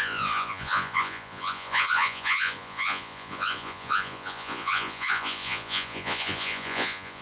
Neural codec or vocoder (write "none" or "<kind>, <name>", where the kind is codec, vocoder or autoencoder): vocoder, Vocos